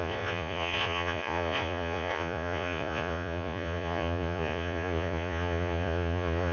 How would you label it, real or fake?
fake